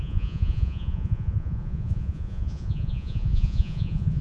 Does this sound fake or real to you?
fake